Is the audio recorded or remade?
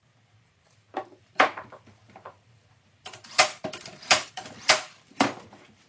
remade